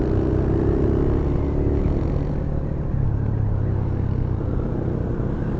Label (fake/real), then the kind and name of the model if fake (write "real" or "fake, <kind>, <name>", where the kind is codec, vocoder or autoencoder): real